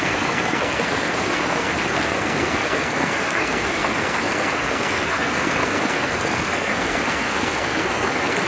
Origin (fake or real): fake